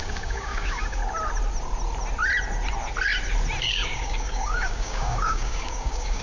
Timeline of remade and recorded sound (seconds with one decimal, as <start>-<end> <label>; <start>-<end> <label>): 0.0-1.0 remade; 1.0-3.6 recorded; 3.6-6.2 remade